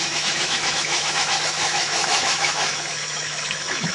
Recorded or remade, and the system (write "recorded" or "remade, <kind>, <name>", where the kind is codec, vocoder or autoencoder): remade, autoencoder, DAC-VAE